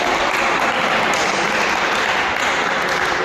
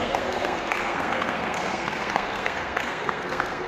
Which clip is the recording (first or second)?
first